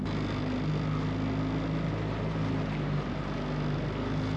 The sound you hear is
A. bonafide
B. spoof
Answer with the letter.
A